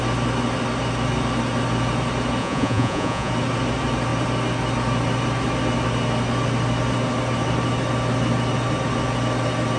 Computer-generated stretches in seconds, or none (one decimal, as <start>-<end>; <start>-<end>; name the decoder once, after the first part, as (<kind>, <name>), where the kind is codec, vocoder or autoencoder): 2.4-3.3 (vocoder, Vocos)